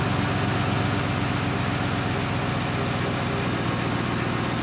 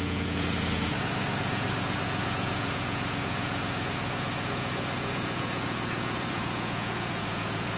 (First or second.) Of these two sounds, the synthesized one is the second